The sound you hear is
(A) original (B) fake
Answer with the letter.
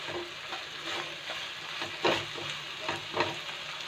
A